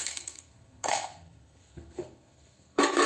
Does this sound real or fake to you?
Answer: fake